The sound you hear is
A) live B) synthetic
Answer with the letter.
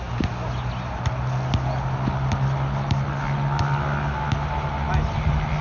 A